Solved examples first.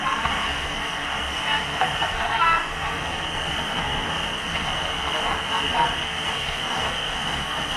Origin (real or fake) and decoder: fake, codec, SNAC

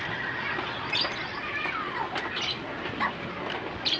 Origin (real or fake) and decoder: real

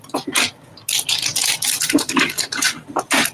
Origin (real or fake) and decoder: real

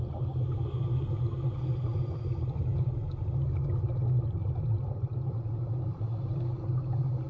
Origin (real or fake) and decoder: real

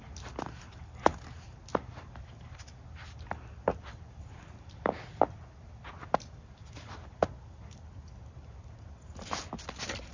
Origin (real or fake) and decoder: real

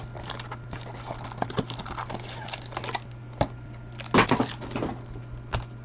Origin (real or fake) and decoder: real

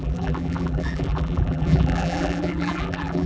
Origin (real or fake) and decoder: fake, vocoder, BigVGAN v2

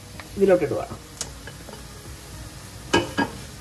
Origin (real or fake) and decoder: real